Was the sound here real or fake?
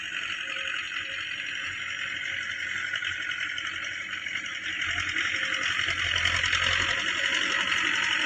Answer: real